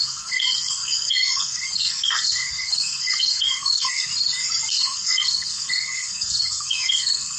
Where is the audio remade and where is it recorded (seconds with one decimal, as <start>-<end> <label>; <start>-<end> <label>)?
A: 0.0-4.1 remade; 4.1-4.7 recorded; 4.7-7.4 remade

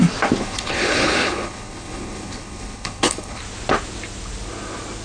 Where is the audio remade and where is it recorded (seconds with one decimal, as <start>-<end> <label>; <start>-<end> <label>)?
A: 0.0-0.4 recorded; 0.4-3.4 remade; 3.4-5.0 recorded

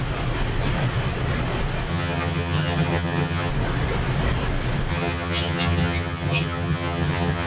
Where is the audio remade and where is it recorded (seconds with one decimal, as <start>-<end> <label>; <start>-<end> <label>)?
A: 0.0-1.9 recorded; 1.9-3.5 remade; 3.5-4.9 recorded; 4.9-7.5 remade

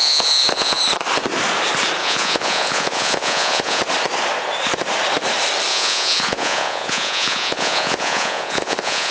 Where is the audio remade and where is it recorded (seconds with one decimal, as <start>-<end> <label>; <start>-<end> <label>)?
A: 0.0-0.8 remade; 0.8-2.0 recorded; 2.0-3.8 remade; 3.8-5.7 recorded; 5.7-9.1 remade

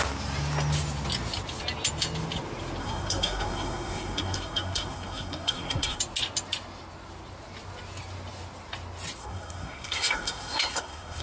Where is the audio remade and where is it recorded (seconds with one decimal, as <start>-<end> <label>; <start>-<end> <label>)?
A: 0.0-2.8 recorded; 2.8-6.0 remade; 6.0-9.2 recorded; 9.2-11.2 remade

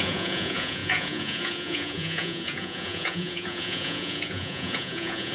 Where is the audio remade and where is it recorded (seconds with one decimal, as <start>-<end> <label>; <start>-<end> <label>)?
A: 0.0-5.3 remade

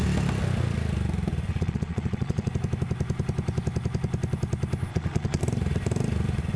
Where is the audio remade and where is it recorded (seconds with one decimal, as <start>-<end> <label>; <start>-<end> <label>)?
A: 0.0-1.5 recorded; 1.5-2.5 remade; 2.5-4.9 recorded; 4.9-5.4 remade; 5.4-6.6 recorded